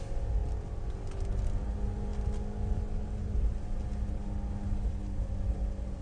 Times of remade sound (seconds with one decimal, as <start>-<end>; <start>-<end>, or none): none